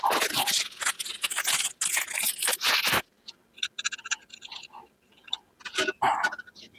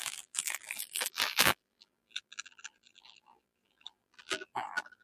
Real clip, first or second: first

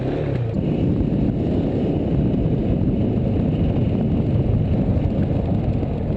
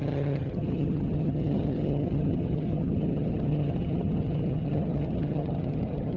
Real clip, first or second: first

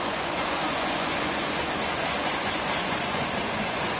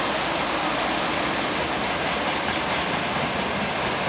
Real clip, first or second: second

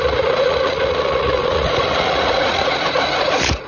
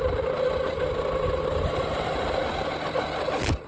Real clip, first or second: second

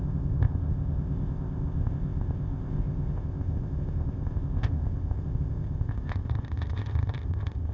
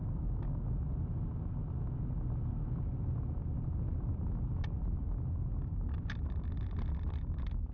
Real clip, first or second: second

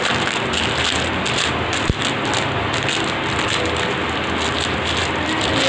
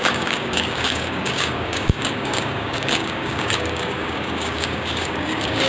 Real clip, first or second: first